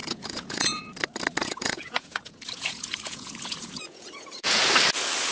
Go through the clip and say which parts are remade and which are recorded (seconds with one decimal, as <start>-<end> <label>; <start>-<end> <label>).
0.0-0.8 remade; 0.8-1.4 recorded; 1.4-4.6 remade; 4.6-5.3 recorded